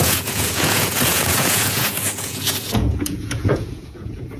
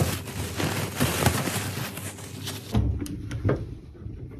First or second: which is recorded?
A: second